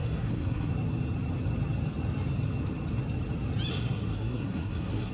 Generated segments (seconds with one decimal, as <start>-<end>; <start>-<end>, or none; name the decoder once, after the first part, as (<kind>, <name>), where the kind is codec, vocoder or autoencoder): 0.0-0.7 (codec, SNAC); 3.7-5.1